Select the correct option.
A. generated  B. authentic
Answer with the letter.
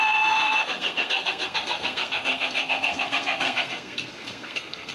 A